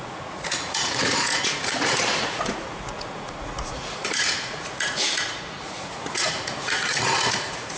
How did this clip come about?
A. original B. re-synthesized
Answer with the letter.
B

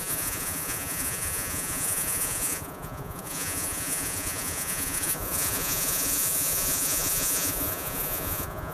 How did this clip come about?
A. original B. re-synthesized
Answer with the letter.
B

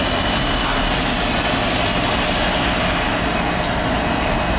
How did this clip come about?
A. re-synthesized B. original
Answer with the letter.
B